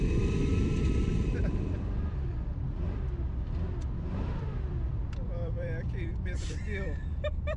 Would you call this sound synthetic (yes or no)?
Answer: yes